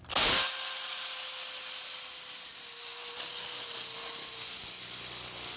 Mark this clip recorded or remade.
recorded